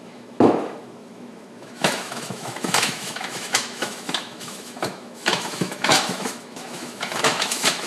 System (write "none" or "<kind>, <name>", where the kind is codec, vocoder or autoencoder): autoencoder, DAC-VAE